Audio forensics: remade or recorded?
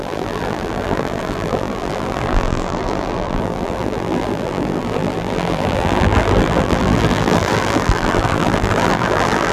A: remade